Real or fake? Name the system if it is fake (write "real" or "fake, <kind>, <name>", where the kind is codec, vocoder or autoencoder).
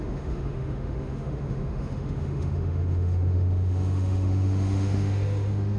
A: fake, autoencoder, DAC-VAE